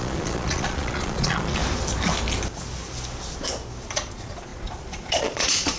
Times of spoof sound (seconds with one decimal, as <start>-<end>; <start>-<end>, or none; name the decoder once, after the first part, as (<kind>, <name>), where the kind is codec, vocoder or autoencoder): 0.0-1.6 (vocoder, Vocos); 3.8-5.8